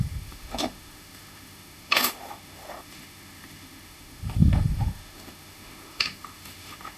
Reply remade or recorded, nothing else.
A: remade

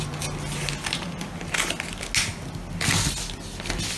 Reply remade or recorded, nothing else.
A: recorded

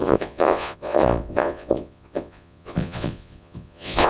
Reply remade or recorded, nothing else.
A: remade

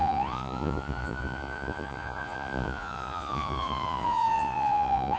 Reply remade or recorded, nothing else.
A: remade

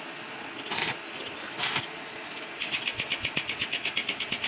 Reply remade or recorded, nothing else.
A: recorded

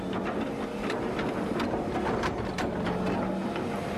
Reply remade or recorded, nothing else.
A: recorded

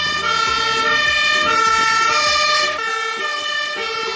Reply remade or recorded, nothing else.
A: recorded